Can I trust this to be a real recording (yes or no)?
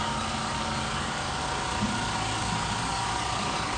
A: no